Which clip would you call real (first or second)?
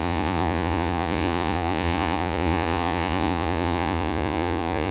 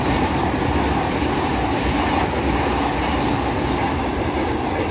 second